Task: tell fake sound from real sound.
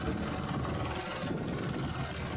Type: real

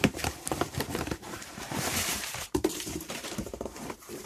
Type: fake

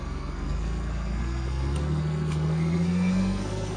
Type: fake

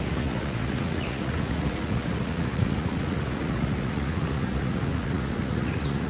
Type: fake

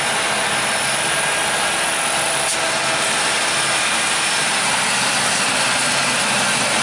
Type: real